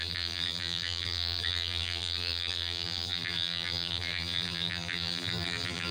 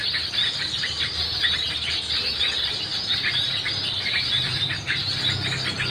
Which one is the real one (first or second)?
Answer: second